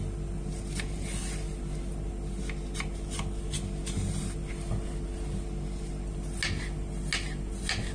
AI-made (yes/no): no